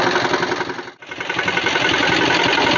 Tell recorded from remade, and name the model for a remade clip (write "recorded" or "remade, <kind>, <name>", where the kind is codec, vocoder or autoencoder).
recorded